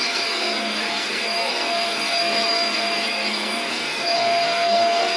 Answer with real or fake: fake